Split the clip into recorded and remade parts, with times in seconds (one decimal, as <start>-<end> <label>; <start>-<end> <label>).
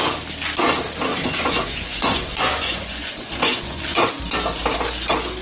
0.0-1.1 recorded; 1.1-4.1 remade; 4.1-5.4 recorded